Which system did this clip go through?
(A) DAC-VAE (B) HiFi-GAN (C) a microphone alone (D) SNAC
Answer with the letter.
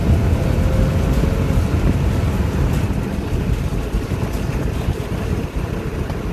C